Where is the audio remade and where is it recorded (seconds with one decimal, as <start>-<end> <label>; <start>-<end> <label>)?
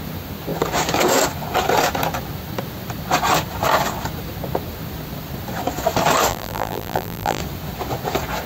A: 0.0-6.3 recorded; 6.3-7.4 remade; 7.4-8.5 recorded